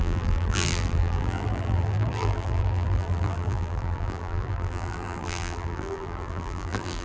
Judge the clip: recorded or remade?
remade